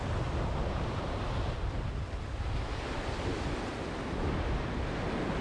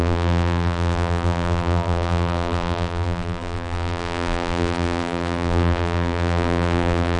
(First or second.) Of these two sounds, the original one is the first